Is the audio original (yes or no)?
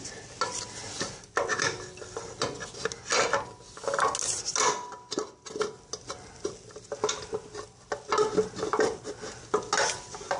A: yes